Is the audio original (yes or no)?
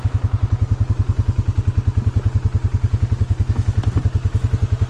yes